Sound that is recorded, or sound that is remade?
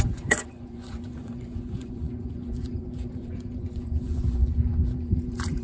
remade